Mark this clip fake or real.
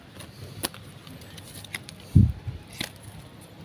real